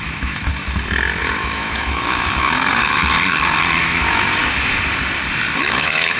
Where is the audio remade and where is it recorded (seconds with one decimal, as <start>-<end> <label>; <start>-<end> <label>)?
0.0-0.5 remade; 0.5-1.2 recorded; 1.2-3.0 remade; 3.0-3.8 recorded; 3.8-4.4 remade; 4.4-5.6 recorded; 5.6-6.2 remade